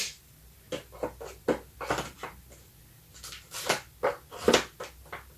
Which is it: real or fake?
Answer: real